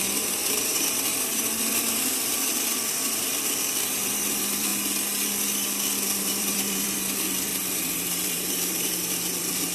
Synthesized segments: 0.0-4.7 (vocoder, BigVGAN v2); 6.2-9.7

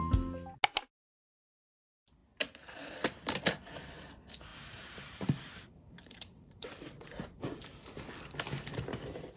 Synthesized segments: 4.5-6.9 (vocoder, BigVGAN v2)